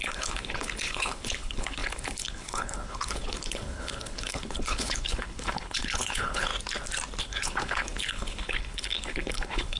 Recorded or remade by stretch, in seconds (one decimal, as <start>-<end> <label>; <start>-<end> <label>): 0.0-6.5 remade; 6.5-7.2 recorded; 7.2-9.8 remade